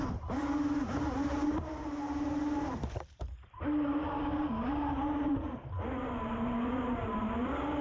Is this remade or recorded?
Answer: remade